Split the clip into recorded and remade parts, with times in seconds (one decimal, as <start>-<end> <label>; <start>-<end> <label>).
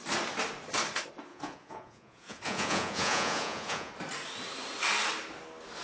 0.0-1.3 recorded; 1.3-3.9 remade; 3.9-5.8 recorded